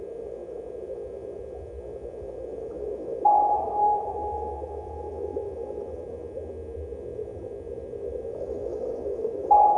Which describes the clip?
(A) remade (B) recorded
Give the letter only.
B